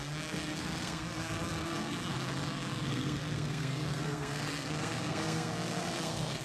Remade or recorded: remade